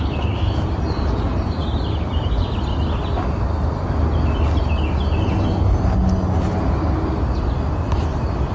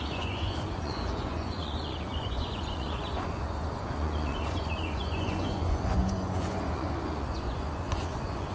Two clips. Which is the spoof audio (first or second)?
second